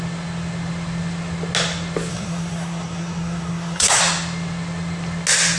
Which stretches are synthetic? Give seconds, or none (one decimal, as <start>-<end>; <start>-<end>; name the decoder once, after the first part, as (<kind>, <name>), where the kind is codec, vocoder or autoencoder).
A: 2.1-4.0 (codec, SNAC)

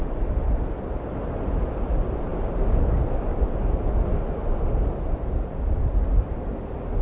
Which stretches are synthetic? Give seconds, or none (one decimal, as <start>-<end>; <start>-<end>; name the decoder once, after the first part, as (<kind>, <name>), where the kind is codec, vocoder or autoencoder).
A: none

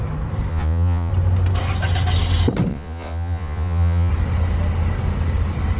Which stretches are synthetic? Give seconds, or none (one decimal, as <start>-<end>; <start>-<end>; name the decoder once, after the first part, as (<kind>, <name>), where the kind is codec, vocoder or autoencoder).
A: 0.5-1.1 (vocoder, Vocos); 2.7-4.1

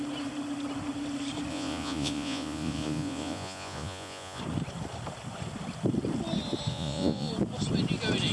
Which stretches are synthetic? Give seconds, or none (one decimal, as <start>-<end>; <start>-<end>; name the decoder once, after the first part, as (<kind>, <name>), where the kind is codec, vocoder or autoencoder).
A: 1.5-4.4 (vocoder, Vocos); 6.7-7.3